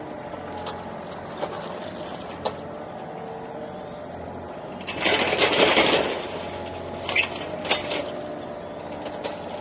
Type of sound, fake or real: real